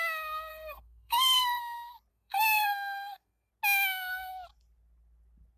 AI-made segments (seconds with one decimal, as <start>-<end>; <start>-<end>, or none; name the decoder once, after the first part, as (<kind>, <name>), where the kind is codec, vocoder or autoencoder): 0.5-1.6 (codec, SNAC); 2.1-3.5

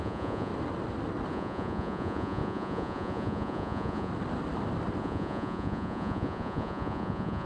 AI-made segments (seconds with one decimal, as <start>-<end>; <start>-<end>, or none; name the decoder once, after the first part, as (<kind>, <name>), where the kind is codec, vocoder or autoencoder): 0.0-0.5 (vocoder, Vocos); 1.3-4.1; 5.0-7.5

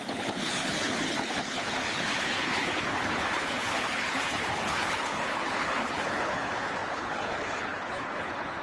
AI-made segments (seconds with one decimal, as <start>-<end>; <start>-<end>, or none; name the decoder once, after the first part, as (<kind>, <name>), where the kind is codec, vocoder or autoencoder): 0.0-8.6 (codec, HILCodec)

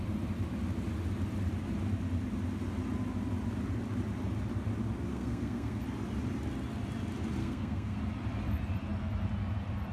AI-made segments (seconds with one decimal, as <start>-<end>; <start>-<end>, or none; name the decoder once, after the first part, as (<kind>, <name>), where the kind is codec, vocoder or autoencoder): 5.1-5.8 (codec, SNAC); 7.4-8.0

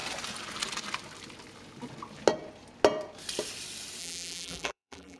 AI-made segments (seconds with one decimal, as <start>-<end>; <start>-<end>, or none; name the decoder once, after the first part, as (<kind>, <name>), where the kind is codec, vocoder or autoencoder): 4.0-5.2 (vocoder, BigVGAN v2)

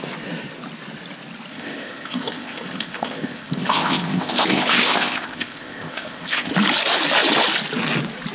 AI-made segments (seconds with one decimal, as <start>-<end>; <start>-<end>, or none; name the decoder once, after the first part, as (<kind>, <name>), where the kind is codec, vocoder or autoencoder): 1.5-6.5 (codec, ZipCodec)

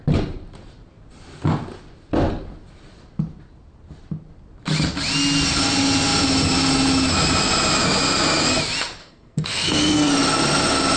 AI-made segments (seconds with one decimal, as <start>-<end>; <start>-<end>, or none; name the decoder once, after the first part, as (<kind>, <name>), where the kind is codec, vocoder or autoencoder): 9.0-10.1 (codec, SNAC)